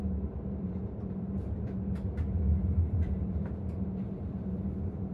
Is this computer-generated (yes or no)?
yes